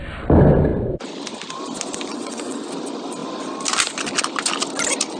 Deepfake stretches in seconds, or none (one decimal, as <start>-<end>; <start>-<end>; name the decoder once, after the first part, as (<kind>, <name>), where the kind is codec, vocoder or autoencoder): 2.1-2.7 (vocoder, WaveNeXt)